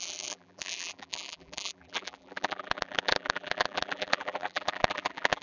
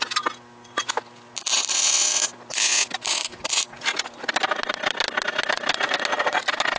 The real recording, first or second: second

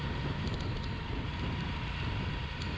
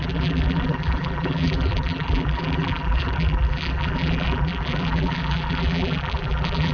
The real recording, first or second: first